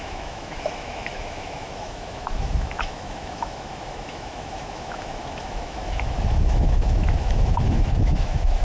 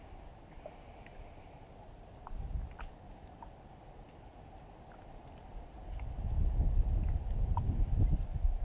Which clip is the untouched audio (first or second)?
second